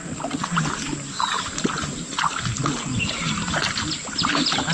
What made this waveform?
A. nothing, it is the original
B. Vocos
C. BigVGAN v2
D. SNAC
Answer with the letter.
A